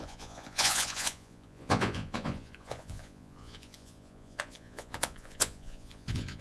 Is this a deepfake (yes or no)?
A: yes